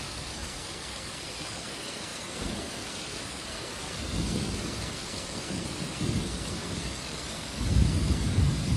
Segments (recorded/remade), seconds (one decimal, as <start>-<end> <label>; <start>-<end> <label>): 0.0-8.8 remade